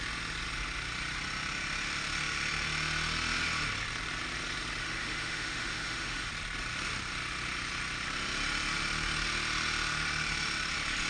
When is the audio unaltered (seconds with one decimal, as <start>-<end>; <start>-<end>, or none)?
0.0-4.8; 6.3-11.1